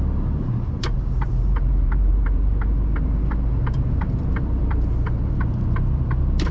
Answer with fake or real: fake